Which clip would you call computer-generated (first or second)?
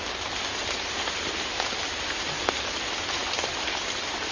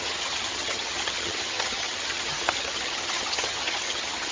second